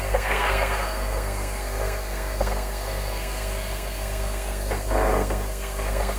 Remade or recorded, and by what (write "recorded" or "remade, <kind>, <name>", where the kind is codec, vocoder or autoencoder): remade, codec, SNAC